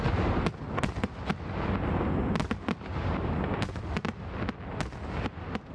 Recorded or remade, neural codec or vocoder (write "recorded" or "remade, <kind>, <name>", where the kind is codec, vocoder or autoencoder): recorded